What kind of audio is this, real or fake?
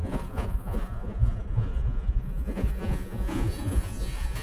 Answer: fake